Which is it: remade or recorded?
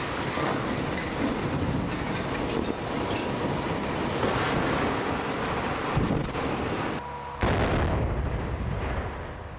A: recorded